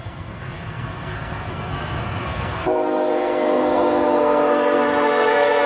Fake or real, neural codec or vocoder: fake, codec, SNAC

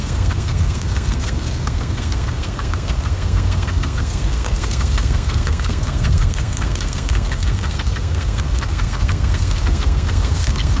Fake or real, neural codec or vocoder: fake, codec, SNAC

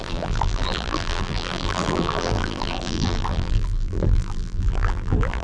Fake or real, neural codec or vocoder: fake, vocoder, BigVGAN v2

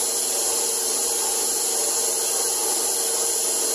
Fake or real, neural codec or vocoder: real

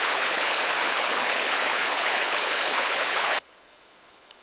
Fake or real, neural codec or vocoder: fake, codec, HILCodec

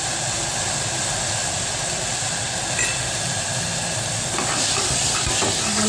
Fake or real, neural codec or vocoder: real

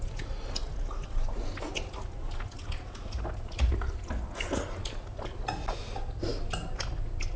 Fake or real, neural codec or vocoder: real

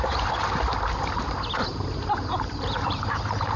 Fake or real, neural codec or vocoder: fake, vocoder, BigVGAN v2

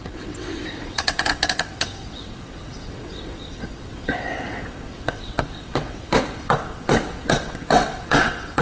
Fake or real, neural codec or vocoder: fake, vocoder, WaveNeXt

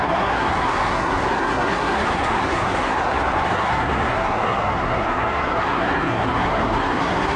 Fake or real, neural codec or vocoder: fake, codec, SNAC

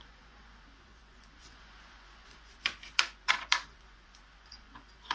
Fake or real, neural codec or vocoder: fake, vocoder, Vocos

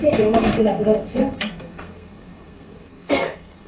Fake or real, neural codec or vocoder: fake, codec, SNAC